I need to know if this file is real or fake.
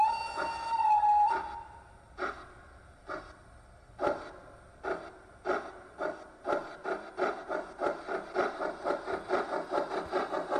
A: real